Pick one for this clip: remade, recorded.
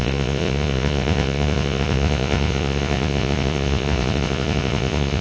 remade